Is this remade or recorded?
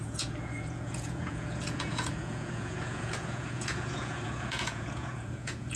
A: remade